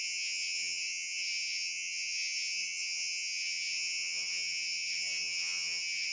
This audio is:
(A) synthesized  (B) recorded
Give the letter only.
A